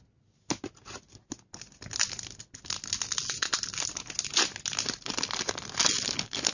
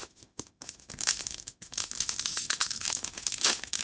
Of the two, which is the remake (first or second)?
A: second